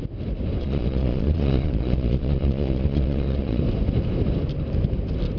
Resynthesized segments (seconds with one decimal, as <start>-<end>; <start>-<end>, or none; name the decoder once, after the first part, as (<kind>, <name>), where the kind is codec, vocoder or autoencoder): 0.6-3.6 (vocoder, Vocos)